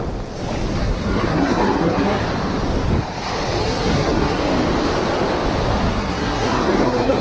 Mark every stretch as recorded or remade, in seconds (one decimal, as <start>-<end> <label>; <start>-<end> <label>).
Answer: 0.0-0.8 recorded; 0.8-2.2 remade; 2.2-3.6 recorded; 3.6-4.4 remade; 4.4-5.9 recorded; 5.9-7.2 remade